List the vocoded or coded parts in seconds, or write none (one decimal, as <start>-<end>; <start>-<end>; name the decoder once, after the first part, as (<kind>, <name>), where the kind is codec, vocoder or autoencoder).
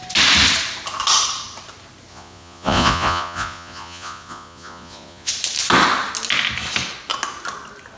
2.1-5.3 (vocoder, Vocos)